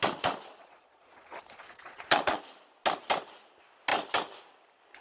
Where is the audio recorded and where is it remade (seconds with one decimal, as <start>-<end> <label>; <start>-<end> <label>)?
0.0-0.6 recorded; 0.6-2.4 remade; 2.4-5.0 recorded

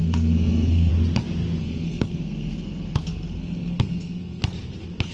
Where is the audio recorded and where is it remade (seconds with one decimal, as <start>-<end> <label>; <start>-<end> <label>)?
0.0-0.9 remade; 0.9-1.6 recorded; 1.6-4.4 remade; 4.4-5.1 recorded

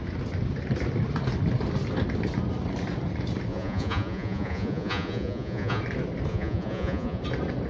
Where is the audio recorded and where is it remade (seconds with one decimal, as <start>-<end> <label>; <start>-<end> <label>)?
0.0-3.5 recorded; 3.5-5.8 remade; 5.8-6.3 recorded; 6.3-7.2 remade; 7.2-7.7 recorded